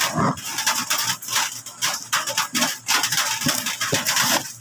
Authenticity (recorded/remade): recorded